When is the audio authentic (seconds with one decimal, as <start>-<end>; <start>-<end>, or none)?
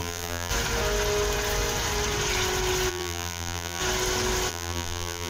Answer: 0.5-2.9; 3.8-4.5